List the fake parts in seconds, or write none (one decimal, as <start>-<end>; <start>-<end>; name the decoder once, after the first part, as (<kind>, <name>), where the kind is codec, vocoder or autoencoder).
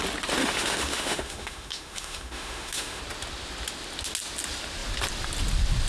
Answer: 0.4-3.0 (autoencoder, DAC-VAE)